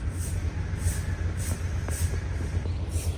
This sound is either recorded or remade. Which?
recorded